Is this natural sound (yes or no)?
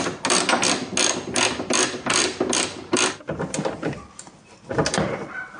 yes